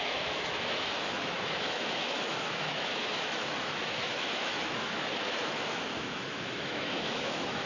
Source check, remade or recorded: remade